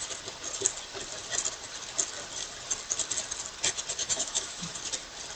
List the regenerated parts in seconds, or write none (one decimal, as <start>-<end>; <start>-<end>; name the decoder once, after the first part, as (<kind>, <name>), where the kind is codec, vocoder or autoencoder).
4.0-4.8 (autoencoder, DAC-VAE)